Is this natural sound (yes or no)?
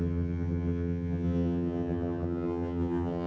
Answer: no